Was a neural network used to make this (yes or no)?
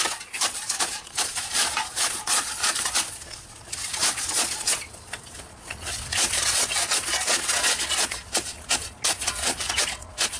yes